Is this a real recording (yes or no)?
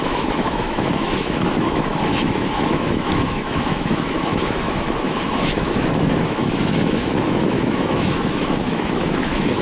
no